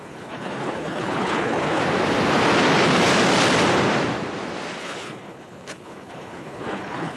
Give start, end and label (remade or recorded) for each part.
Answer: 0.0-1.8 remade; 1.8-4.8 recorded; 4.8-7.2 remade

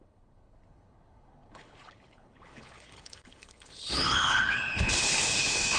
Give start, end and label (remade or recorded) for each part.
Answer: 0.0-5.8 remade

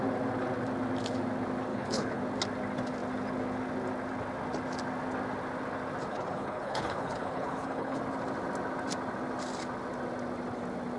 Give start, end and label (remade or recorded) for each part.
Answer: 0.0-1.7 recorded; 1.7-2.2 remade; 2.2-6.1 recorded; 6.1-8.0 remade; 8.0-11.0 recorded

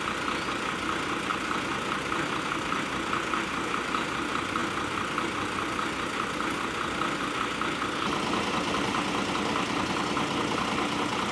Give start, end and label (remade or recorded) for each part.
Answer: 0.0-11.3 recorded

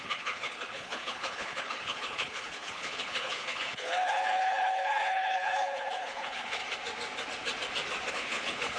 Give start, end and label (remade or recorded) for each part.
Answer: 0.0-6.6 remade; 6.6-8.1 recorded; 8.1-8.8 remade